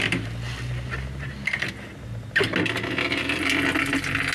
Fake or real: real